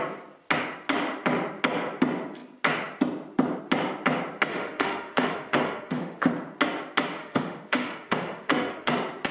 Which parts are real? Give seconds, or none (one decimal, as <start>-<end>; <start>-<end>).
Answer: 0.0-4.5; 6.3-7.2; 8.9-9.3